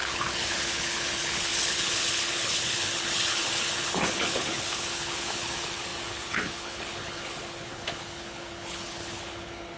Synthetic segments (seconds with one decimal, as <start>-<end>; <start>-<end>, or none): 0.0-9.8